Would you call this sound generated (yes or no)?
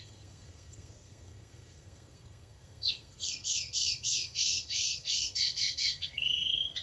yes